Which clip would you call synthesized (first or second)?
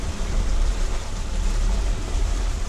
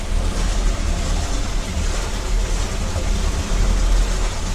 first